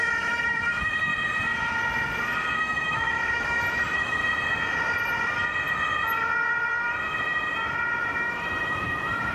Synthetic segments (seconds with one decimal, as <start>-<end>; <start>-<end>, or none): 0.0-1.1; 2.6-4.2; 8.2-9.3